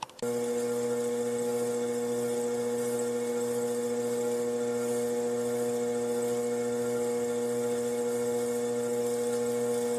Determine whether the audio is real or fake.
real